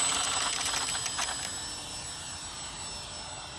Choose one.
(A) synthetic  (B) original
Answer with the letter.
B